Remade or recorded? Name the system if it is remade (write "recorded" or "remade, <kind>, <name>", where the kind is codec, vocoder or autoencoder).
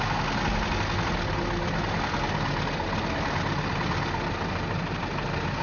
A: recorded